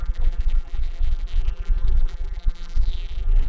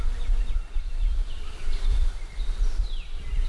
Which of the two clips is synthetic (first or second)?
first